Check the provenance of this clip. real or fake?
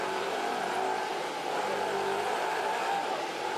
fake